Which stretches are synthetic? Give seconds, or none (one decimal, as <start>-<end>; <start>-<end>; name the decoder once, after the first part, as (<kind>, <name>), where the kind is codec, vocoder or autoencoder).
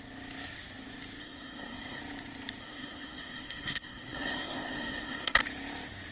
1.2-2.0 (codec, SNAC); 2.6-5.4